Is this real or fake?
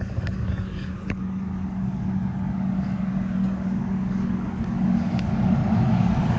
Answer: fake